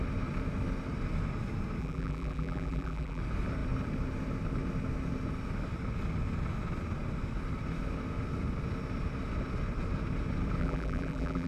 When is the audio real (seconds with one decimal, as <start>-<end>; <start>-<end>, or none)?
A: 0.0-1.8; 3.2-10.6